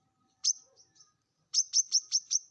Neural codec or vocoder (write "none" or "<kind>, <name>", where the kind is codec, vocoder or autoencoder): vocoder, BigVGAN v2